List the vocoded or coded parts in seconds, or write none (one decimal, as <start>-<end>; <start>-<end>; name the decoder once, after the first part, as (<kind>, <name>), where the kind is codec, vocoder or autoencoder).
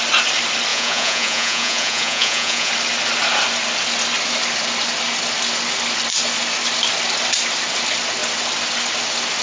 0.7-2.7 (vocoder, Vocos)